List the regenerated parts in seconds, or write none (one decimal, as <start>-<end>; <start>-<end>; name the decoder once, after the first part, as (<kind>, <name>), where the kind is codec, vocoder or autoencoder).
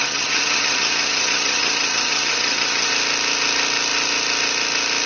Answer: 0.0-2.9 (vocoder, HiFi-GAN)